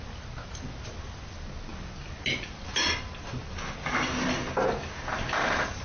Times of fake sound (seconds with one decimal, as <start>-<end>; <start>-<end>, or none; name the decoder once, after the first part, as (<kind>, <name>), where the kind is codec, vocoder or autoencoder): none